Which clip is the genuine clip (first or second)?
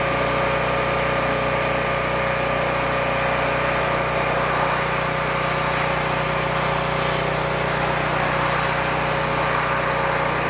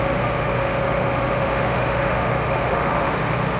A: first